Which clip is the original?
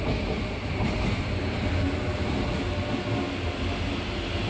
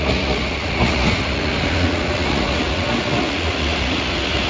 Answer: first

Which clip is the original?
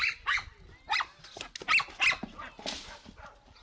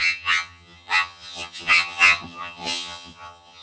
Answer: first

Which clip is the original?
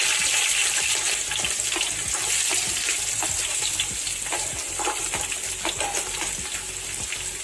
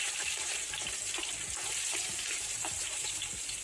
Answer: first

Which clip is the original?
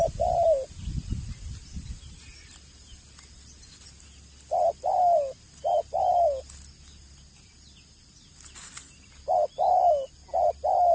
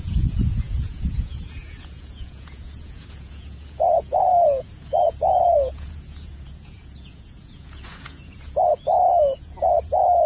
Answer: first